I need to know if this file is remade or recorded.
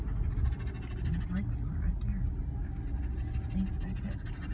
recorded